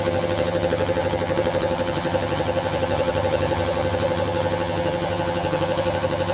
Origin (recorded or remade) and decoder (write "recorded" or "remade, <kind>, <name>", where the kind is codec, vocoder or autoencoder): remade, vocoder, HiFi-GAN